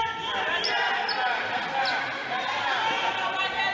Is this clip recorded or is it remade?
recorded